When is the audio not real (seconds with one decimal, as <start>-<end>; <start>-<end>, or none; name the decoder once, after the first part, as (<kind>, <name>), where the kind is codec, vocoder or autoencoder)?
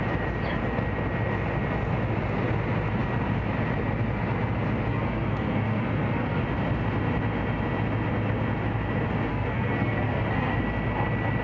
4.9-6.4 (codec, SNAC); 9.3-10.6